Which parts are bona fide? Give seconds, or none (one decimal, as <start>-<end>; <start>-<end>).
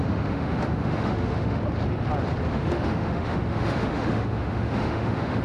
1.6-2.5